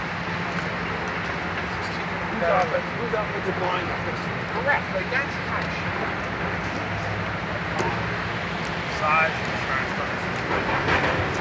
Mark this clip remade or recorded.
recorded